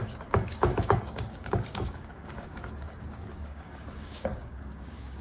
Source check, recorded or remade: remade